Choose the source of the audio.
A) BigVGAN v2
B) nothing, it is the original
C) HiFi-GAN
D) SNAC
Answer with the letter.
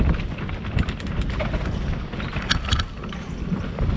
B